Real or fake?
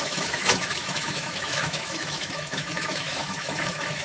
fake